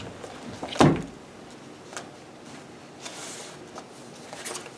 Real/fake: real